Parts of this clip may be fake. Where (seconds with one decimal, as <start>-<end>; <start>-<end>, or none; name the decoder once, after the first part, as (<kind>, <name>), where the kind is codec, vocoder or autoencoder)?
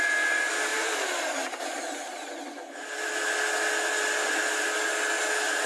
0.7-2.3 (vocoder, BigVGAN v2)